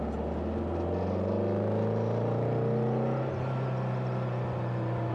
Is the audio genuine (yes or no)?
yes